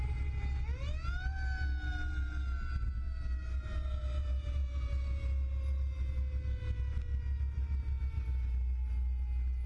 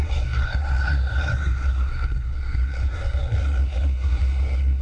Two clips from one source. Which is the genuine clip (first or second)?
first